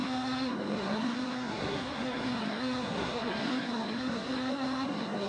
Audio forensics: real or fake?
fake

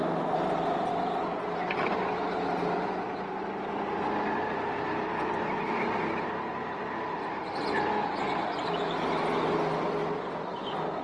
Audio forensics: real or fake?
real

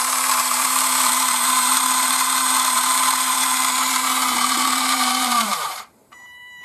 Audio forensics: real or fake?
fake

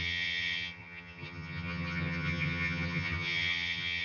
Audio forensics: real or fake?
fake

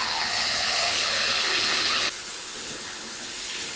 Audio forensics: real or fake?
fake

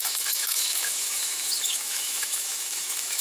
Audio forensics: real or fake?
fake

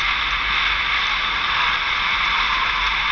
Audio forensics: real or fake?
real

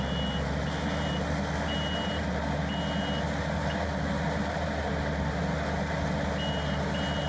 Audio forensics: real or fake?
real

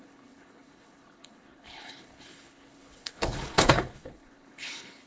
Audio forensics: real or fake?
fake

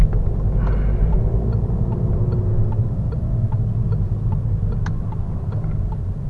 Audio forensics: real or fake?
real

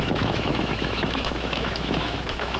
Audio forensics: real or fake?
fake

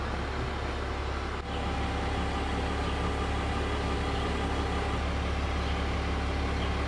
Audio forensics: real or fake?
real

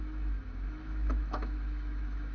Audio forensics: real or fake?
fake